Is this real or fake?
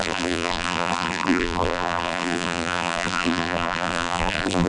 fake